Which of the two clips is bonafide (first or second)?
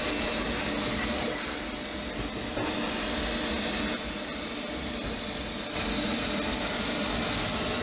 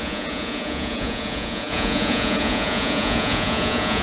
first